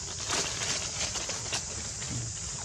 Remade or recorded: recorded